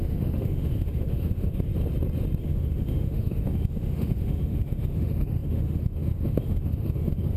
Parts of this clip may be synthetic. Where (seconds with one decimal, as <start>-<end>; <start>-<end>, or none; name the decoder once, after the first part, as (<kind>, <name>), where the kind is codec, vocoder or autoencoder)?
0.0-1.7 (autoencoder, DAC-VAE); 2.4-7.4